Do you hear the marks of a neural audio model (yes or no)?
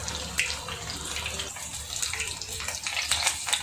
no